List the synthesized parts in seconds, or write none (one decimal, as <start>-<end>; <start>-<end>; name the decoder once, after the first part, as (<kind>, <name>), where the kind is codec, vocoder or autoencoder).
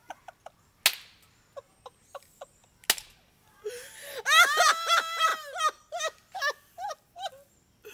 none